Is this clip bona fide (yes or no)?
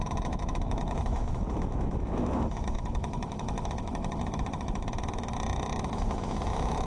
no